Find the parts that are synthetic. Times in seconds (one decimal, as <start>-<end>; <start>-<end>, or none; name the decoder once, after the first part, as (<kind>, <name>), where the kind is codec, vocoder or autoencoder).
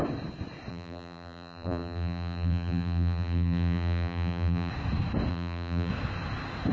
0.7-4.7 (vocoder, BigVGAN v2); 5.3-5.9